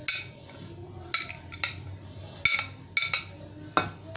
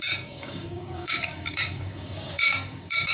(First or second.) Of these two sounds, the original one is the first